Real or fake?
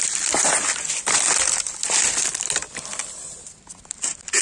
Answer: real